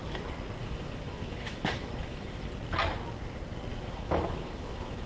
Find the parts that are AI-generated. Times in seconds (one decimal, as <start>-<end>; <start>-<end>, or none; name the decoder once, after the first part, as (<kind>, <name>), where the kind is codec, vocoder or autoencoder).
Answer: 0.6-2.5 (autoencoder, DAC-VAE); 3.7-5.1